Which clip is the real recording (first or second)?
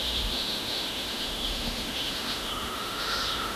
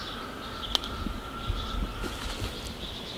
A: second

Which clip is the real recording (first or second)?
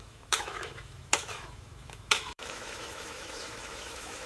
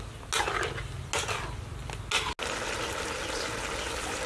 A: second